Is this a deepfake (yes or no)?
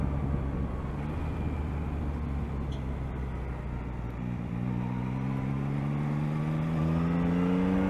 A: no